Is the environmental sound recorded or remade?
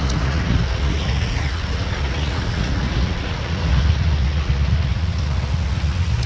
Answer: remade